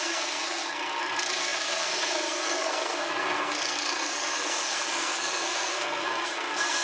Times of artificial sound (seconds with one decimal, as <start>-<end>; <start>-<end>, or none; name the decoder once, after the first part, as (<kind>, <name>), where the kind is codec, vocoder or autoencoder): 0.0-6.8 (codec, SNAC)